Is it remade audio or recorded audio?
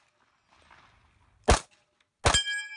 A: recorded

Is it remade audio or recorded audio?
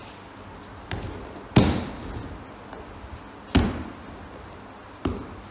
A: recorded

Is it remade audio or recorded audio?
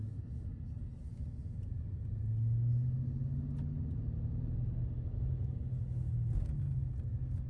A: recorded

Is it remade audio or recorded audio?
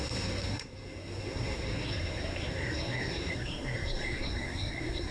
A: remade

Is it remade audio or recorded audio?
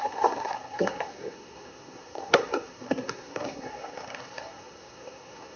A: remade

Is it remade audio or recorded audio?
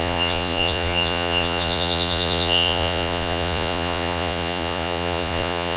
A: remade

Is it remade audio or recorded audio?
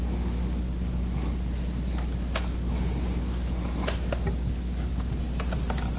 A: recorded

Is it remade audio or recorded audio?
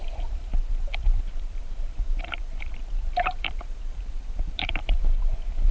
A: remade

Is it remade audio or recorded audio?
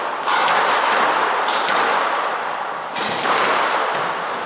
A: remade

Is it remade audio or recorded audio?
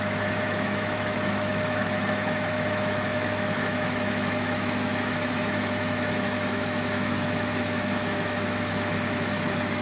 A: remade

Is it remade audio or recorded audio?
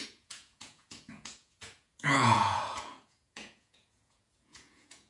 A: remade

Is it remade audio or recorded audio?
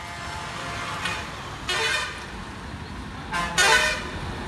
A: recorded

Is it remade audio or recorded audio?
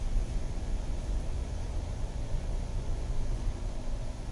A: remade